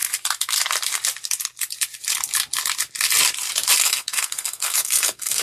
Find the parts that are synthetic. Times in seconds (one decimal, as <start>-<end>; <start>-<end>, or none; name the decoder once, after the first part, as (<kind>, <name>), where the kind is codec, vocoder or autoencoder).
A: 3.8-5.4 (codec, SNAC)